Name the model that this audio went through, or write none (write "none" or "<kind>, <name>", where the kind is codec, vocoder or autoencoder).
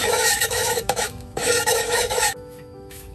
autoencoder, DAC-VAE